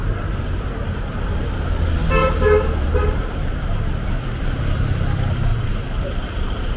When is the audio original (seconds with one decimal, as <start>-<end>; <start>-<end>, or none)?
1.6-2.2; 3.8-5.5